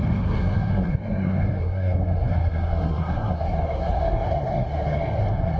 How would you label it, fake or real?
fake